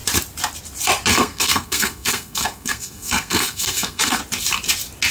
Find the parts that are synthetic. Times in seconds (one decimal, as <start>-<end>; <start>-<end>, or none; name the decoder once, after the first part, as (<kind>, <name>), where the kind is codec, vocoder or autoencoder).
1.1-4.2 (codec, SNAC)